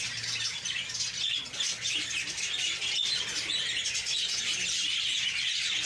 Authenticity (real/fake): real